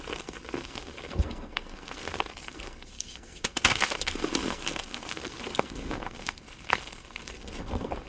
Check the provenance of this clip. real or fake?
fake